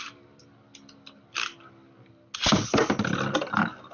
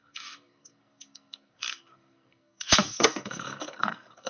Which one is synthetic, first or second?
second